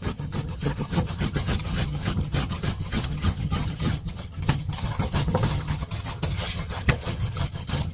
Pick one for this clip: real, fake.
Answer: fake